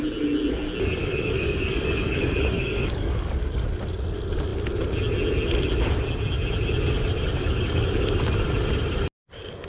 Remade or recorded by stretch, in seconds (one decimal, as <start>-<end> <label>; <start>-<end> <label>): 0.0-1.0 recorded; 1.0-3.4 remade; 3.4-7.4 recorded; 7.4-8.5 remade; 8.5-9.7 recorded